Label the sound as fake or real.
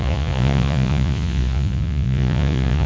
fake